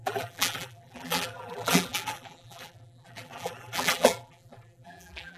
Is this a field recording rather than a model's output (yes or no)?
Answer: no